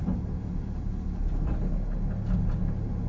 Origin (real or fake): real